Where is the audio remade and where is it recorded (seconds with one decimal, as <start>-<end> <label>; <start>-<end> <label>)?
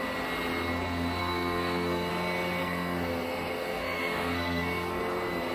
0.0-1.2 recorded; 1.2-2.1 remade; 2.1-2.6 recorded; 2.6-5.0 remade; 5.0-5.5 recorded